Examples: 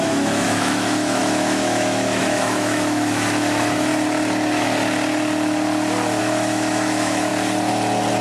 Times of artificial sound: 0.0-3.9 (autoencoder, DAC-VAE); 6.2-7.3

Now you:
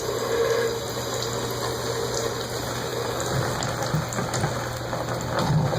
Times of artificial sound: none